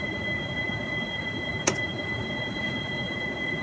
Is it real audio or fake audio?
fake